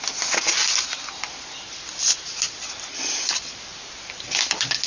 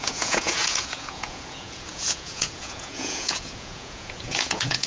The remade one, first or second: second